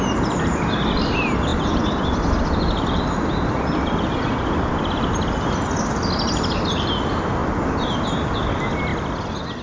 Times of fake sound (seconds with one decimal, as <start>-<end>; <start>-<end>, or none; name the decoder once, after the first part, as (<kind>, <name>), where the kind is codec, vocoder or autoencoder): none